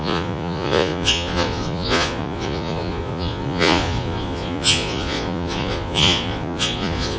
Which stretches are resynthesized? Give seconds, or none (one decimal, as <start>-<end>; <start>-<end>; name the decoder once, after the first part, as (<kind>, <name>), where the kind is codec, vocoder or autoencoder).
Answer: 0.0-7.2 (vocoder, Vocos)